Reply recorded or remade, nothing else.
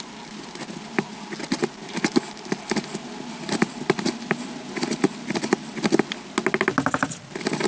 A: recorded